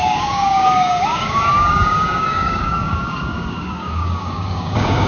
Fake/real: fake